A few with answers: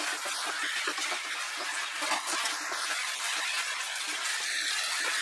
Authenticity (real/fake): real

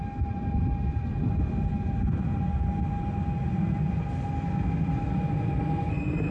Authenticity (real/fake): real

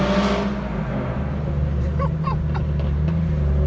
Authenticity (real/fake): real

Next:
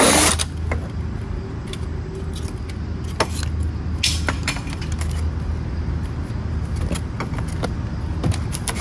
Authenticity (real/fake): real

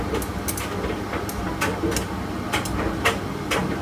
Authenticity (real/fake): real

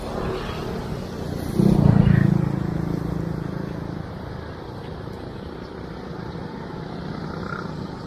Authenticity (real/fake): real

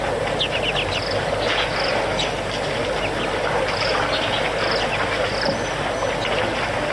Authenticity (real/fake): real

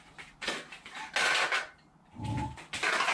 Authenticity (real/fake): real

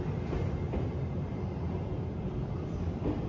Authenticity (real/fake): real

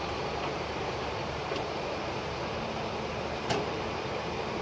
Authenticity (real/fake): fake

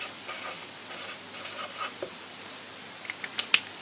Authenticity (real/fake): real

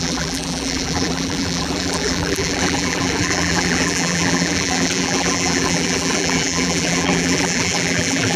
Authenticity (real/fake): fake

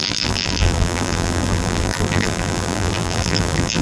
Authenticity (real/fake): fake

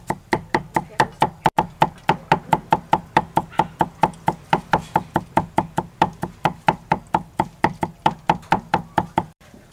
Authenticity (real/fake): fake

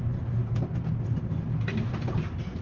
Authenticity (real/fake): real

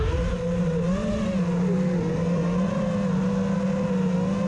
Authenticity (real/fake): real